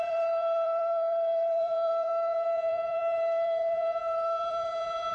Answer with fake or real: fake